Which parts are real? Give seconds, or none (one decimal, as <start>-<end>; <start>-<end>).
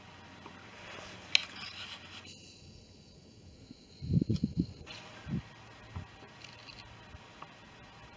0.0-3.9; 5.1-8.2